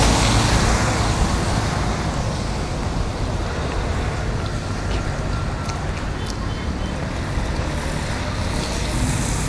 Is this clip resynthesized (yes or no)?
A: no